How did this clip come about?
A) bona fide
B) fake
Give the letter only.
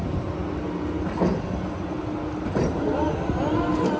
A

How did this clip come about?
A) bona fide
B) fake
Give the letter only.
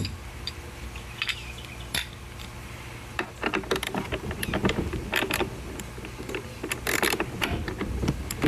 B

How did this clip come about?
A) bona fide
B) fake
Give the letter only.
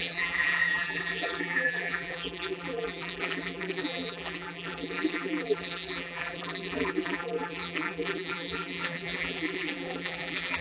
B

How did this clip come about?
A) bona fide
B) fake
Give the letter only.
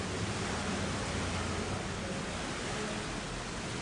A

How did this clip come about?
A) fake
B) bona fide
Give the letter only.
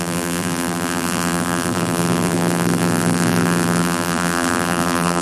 A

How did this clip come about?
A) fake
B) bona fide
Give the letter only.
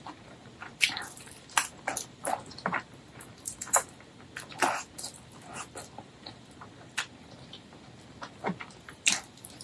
A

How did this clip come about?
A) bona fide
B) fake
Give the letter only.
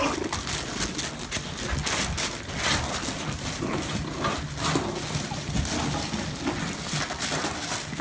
A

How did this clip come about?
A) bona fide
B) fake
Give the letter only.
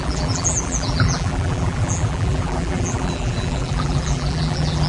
B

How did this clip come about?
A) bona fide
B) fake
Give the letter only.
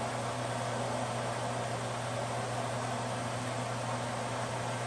A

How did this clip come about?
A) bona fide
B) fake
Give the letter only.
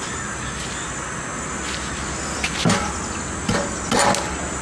A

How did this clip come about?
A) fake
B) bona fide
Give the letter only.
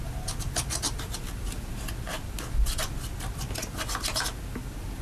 B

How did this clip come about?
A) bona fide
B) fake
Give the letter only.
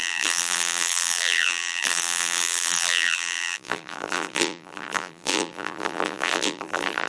B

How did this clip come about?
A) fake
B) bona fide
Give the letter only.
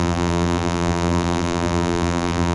A